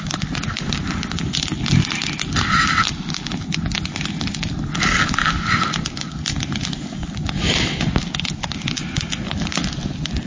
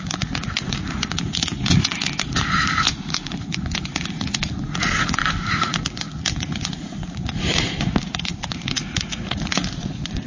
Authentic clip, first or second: first